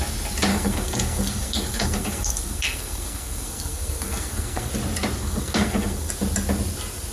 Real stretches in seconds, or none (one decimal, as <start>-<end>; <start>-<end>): 0.0-0.5; 4.7-5.2; 6.1-7.1